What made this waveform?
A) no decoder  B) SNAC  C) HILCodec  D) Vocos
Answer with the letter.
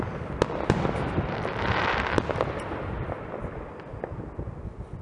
A